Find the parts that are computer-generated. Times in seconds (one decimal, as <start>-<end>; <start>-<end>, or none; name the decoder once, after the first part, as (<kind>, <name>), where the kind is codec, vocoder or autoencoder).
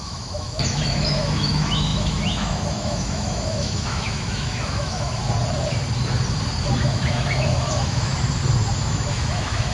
0.0-5.2 (autoencoder, DAC-VAE); 6.8-8.1; 8.8-9.7